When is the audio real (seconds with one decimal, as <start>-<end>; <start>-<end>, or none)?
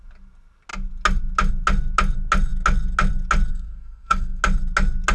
0.0-3.5; 4.4-5.1